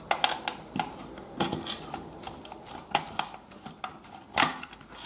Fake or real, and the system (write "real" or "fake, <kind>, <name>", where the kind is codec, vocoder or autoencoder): real